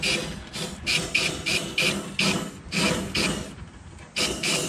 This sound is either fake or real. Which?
real